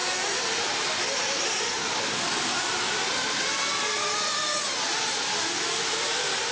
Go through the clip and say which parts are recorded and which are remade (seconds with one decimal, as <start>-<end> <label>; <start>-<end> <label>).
0.0-6.5 recorded